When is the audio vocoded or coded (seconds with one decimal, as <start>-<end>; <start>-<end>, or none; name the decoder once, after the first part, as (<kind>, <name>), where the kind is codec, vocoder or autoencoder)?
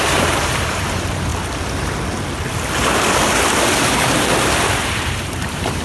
0.0-1.3 (vocoder, BigVGAN v2); 4.8-5.8